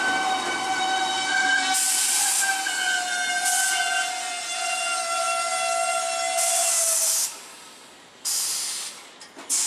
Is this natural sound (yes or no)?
yes